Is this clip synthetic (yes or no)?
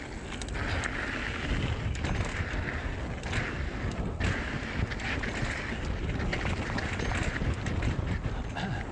no